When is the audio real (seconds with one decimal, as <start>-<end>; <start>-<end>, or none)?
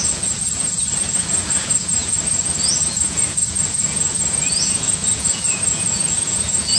none